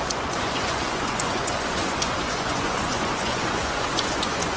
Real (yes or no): no